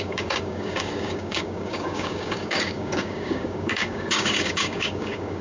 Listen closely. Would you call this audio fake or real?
fake